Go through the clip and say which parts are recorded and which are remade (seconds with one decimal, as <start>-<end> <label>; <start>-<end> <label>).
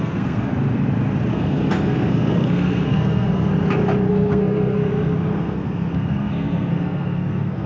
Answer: 0.0-0.5 remade; 0.5-1.3 recorded; 1.3-3.5 remade; 3.5-4.1 recorded; 4.1-7.7 remade